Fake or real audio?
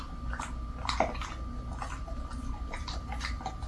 real